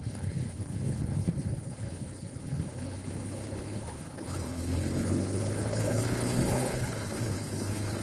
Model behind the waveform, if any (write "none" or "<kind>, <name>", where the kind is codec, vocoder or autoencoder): codec, HILCodec